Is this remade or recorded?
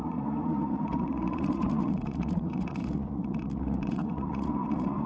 remade